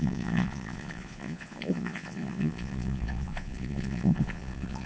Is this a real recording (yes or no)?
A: no